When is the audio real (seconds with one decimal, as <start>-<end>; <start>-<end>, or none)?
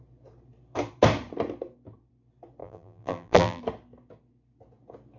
0.0-2.6; 3.6-5.2